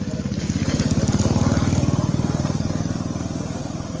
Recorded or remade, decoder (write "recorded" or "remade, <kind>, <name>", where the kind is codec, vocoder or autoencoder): recorded